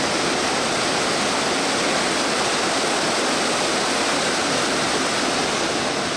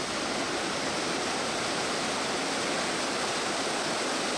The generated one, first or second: second